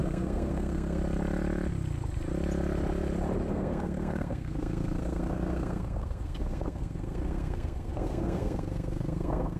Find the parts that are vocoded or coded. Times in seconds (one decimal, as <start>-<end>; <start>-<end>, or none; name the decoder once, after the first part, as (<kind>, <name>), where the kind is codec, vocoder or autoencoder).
0.0-1.0 (codec, SNAC); 3.5-9.6